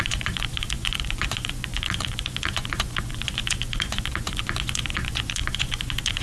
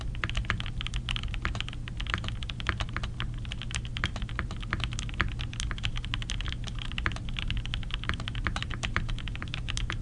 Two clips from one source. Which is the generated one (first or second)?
first